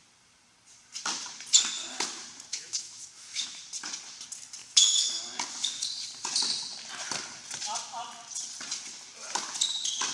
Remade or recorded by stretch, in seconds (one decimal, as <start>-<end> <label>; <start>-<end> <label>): 0.0-2.5 recorded; 2.5-3.6 remade; 3.6-4.6 recorded; 4.6-5.2 remade; 5.2-10.1 recorded